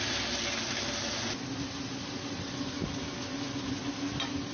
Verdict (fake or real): real